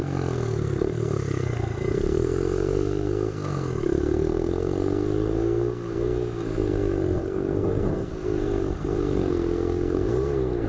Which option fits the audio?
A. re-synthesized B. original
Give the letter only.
A